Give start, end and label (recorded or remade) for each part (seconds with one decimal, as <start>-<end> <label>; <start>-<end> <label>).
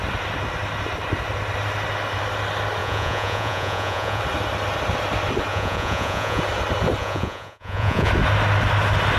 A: 0.0-2.8 recorded; 2.8-4.2 remade; 4.2-5.5 recorded; 5.5-6.4 remade; 6.4-7.0 recorded; 7.0-8.1 remade; 8.1-9.2 recorded